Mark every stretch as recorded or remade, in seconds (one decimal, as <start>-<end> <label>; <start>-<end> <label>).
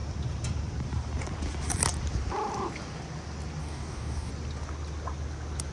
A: 0.0-3.6 recorded; 3.6-4.3 remade; 4.3-5.7 recorded